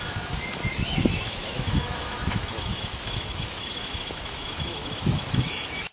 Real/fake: fake